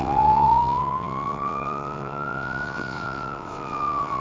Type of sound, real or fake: fake